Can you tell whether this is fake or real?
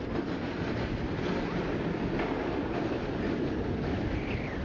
real